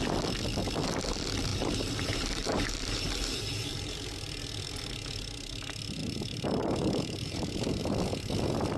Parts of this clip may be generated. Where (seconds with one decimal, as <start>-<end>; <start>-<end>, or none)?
1.5-4.1; 6.0-7.8